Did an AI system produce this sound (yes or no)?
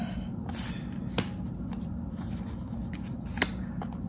no